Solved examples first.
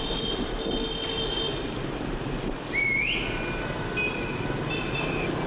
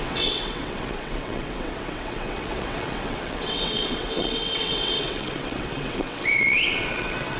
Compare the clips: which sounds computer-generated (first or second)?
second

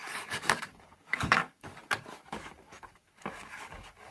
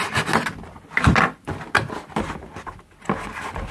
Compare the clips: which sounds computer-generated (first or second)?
first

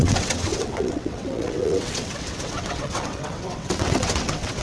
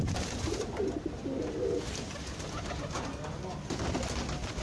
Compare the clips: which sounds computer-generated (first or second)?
first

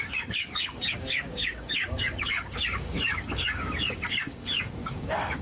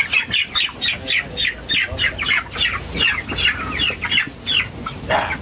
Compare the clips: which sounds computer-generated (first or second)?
first